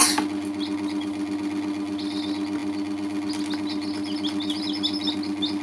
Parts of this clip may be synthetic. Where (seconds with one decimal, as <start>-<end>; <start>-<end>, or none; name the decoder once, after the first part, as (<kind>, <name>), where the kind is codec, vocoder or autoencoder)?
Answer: none